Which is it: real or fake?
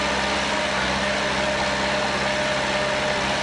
real